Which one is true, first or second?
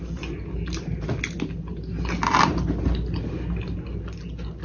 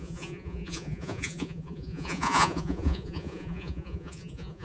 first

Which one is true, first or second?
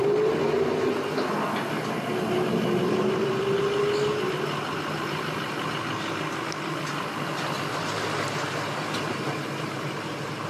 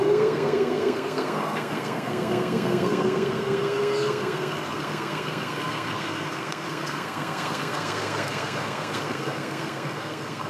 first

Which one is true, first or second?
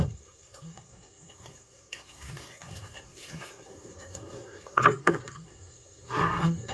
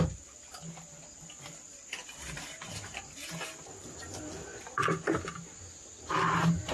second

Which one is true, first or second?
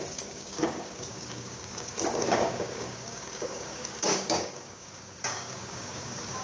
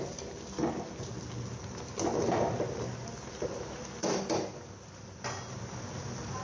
second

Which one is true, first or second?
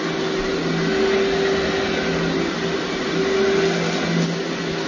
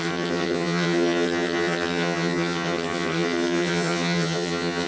first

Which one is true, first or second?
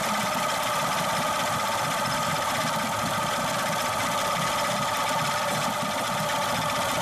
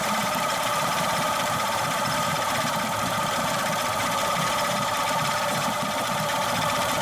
first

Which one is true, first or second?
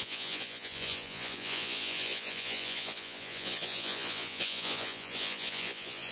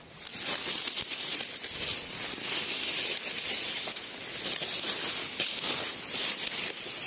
second